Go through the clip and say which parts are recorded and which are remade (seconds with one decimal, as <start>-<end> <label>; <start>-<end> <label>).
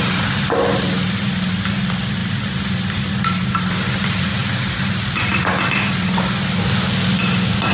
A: 0.0-7.7 recorded